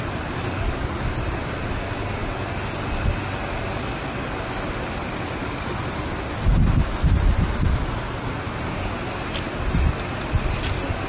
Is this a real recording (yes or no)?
yes